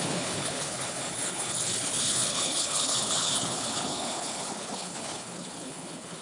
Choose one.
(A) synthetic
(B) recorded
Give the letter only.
A